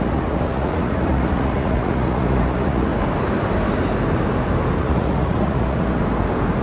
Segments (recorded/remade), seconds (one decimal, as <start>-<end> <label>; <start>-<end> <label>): 0.0-2.9 remade; 2.9-4.8 recorded; 4.8-6.0 remade; 6.0-6.6 recorded